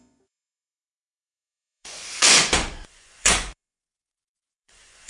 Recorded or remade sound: remade